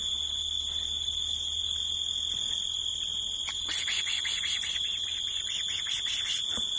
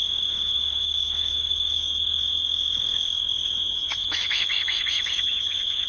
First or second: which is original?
first